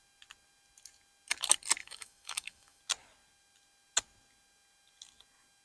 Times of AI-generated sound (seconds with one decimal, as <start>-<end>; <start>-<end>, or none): 1.8-2.8